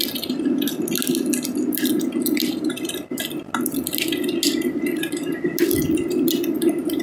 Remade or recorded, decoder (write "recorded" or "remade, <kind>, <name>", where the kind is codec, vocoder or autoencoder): recorded